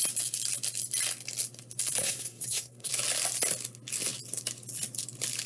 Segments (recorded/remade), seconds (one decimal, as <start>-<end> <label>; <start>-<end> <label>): 0.0-2.0 recorded; 2.0-2.9 remade; 2.9-5.5 recorded